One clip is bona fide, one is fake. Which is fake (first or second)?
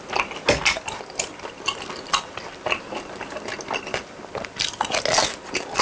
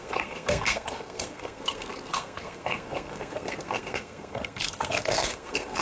second